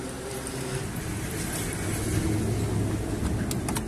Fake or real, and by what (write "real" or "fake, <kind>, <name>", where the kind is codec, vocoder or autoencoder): real